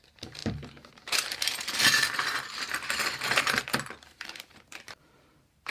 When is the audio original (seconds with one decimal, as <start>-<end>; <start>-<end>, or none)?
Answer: none